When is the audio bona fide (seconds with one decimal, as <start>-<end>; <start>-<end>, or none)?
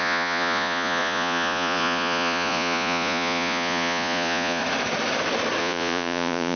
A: 4.6-5.6